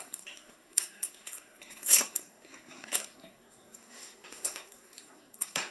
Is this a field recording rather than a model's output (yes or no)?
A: no